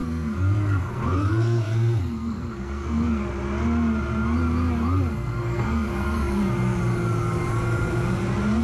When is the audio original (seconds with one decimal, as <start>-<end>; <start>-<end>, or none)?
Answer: 3.3-5.1; 6.4-8.6